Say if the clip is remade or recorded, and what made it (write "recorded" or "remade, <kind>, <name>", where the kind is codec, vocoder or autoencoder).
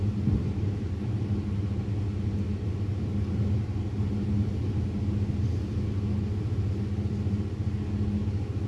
recorded